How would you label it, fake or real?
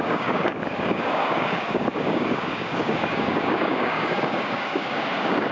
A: fake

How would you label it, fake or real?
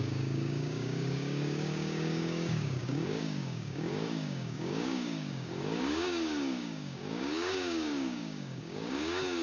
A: fake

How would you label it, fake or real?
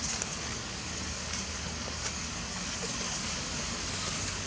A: fake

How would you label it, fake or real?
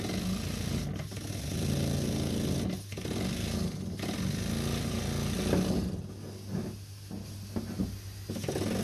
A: real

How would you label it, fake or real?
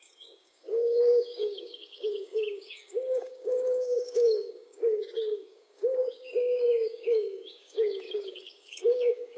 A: fake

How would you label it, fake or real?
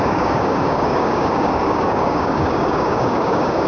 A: fake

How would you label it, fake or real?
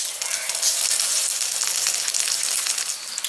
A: real